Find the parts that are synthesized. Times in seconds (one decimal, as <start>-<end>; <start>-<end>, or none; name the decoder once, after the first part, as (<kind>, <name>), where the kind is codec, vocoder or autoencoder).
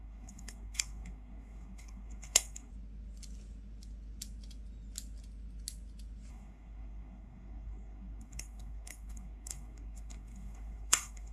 0.0-2.7 (codec, SNAC); 6.3-11.3